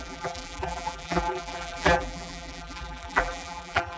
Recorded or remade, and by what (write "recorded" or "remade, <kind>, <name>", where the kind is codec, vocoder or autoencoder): remade, vocoder, BigVGAN v2